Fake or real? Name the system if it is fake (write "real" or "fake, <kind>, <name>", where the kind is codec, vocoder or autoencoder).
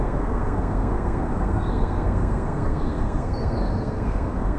fake, codec, SNAC